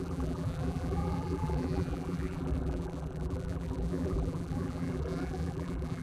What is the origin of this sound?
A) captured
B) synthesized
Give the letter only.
B